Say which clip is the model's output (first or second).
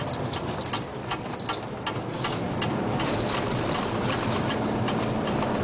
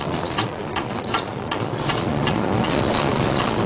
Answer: second